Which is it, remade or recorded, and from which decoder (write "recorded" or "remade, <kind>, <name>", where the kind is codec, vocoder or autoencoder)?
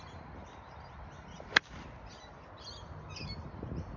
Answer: recorded